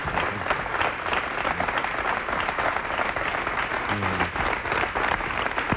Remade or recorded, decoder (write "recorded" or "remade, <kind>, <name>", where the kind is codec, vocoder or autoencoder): recorded